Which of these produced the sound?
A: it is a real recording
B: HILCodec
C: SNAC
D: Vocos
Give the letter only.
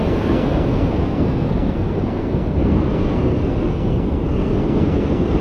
C